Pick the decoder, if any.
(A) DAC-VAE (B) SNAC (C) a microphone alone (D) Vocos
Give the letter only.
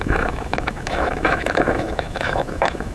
A